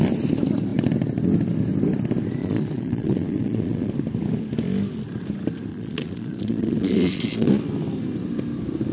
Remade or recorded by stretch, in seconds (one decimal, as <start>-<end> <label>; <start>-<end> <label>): 0.0-2.4 recorded; 2.4-3.9 remade; 3.9-5.7 recorded; 5.7-7.5 remade; 7.5-8.9 recorded